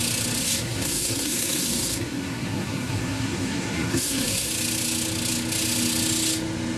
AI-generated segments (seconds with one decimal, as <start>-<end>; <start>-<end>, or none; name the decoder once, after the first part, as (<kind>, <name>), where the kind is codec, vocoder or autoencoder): 0.4-4.5 (codec, SNAC)